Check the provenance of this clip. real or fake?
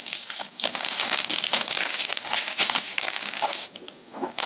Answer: fake